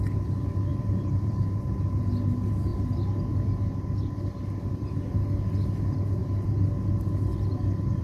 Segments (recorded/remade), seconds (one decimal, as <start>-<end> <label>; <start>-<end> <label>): 0.0-0.7 recorded; 0.7-2.0 remade; 2.0-8.0 recorded